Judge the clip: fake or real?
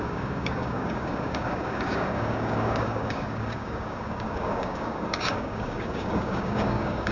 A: fake